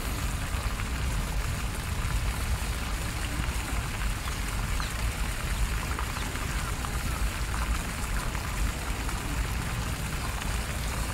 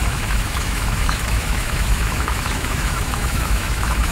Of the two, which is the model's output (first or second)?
second